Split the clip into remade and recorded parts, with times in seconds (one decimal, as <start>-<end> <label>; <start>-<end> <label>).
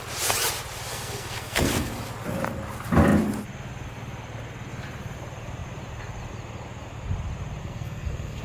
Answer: 0.0-0.9 recorded; 0.9-1.9 remade; 1.9-7.6 recorded; 7.6-8.4 remade